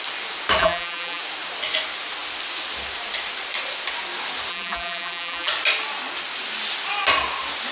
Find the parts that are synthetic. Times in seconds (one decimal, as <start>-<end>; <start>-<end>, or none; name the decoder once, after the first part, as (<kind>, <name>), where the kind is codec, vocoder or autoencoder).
0.6-1.2 (vocoder, BigVGAN v2); 4.5-5.5

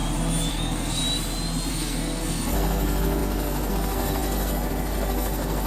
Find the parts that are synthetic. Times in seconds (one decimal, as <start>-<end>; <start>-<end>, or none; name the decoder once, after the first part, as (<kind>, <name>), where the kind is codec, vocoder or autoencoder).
0.5-1.0 (codec, SNAC); 1.7-5.7

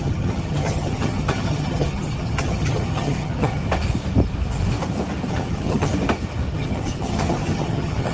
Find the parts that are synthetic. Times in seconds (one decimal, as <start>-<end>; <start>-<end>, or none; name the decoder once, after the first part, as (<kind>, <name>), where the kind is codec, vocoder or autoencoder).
0.0-3.6 (vocoder, HiFi-GAN); 5.3-5.9; 6.5-8.1

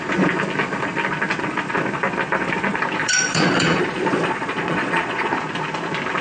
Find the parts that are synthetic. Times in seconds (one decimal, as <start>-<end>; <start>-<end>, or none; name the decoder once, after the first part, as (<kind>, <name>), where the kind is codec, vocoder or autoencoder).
3.0-5.3 (vocoder, Vocos)